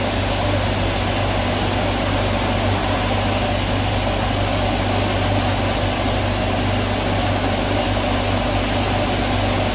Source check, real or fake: real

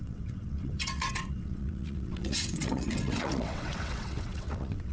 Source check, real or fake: fake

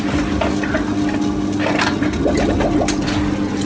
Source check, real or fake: real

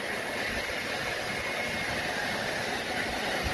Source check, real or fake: real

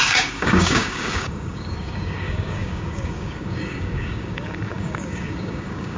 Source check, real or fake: fake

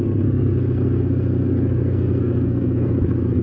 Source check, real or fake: fake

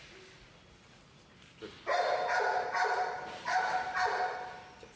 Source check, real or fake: real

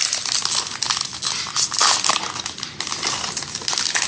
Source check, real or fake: real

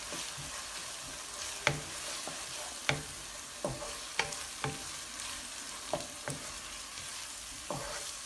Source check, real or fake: real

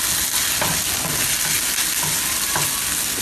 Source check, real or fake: real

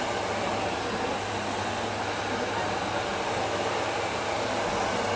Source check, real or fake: real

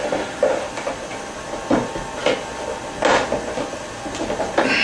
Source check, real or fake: real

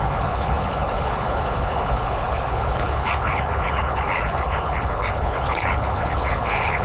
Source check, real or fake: fake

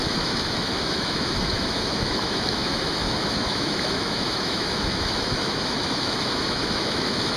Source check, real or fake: fake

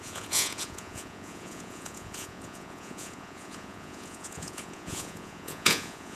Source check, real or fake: fake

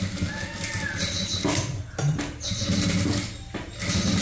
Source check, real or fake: real